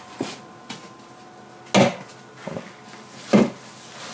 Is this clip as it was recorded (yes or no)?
yes